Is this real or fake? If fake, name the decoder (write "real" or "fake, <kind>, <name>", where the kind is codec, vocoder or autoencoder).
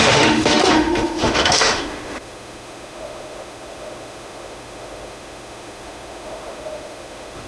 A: fake, autoencoder, DAC-VAE